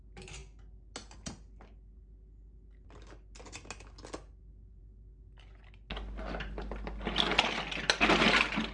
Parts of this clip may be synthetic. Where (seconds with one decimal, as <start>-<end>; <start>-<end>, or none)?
none